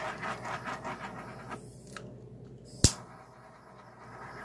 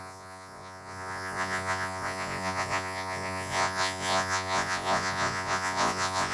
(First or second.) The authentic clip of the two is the first